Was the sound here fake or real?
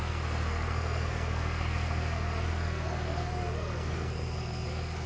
fake